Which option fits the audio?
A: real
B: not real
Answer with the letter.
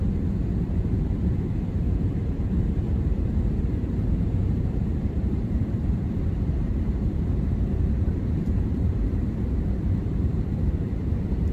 B